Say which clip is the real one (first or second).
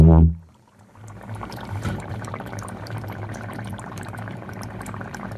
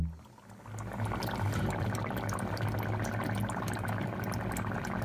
second